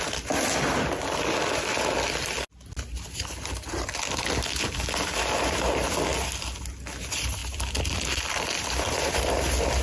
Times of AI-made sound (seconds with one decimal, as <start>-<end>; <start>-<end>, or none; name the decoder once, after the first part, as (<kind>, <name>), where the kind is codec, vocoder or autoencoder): 7.4-9.4 (vocoder, BigVGAN v2)